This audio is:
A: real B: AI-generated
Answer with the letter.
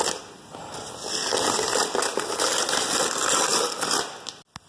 A